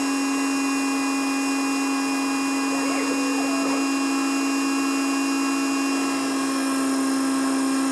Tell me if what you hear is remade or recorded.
recorded